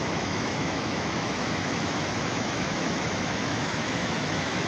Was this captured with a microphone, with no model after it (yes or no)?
no